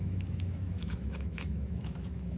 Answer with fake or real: fake